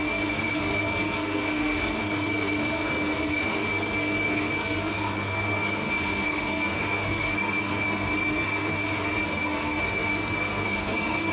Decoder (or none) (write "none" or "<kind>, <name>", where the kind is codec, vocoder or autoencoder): codec, SNAC